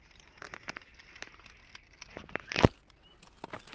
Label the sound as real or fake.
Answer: real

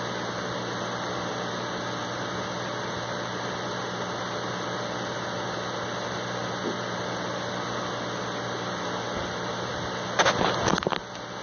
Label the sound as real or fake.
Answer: real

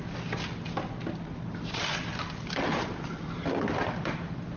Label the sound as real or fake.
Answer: real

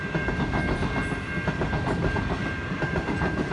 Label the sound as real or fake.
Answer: real